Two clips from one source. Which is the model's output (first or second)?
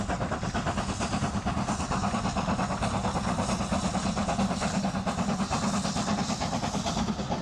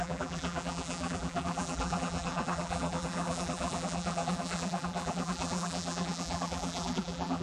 second